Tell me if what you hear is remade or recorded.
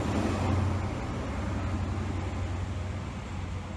recorded